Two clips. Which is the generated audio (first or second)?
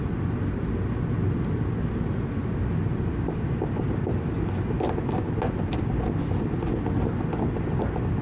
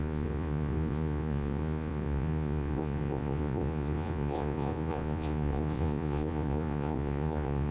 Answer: second